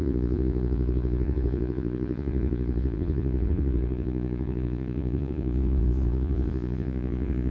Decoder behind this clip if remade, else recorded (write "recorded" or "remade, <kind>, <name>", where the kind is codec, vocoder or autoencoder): remade, vocoder, Vocos